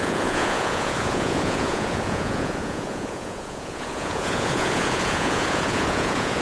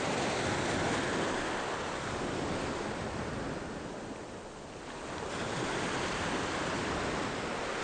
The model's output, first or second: first